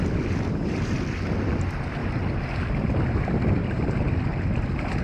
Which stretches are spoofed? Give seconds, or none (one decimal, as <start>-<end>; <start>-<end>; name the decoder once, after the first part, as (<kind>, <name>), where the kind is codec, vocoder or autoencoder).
3.6-4.6 (vocoder, BigVGAN v2)